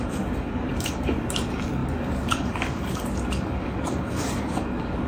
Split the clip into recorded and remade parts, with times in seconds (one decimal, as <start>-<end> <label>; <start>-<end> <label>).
0.0-5.1 remade